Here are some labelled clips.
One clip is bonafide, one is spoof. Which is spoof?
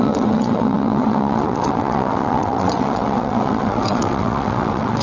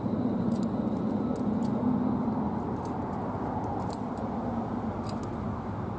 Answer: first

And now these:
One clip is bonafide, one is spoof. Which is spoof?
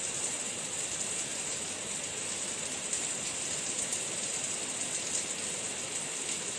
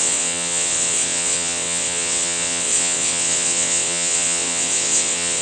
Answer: second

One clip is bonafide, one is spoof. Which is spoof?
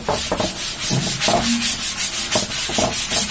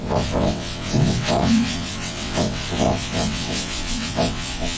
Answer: second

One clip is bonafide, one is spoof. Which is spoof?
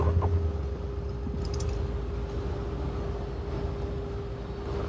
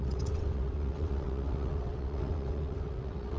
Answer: second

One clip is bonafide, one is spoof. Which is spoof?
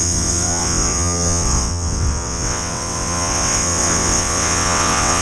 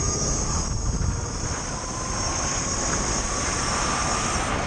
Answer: first